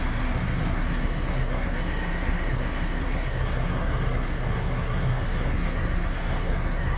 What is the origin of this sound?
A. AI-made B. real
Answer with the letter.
A